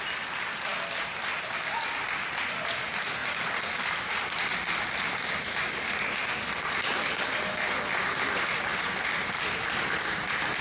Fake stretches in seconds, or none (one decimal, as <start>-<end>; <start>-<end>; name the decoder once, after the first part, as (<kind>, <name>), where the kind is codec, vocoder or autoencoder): none